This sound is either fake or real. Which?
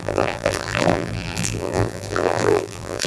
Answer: fake